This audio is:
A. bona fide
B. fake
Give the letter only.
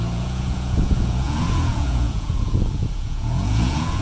B